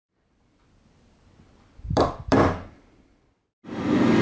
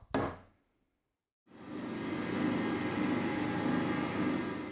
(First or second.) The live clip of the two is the second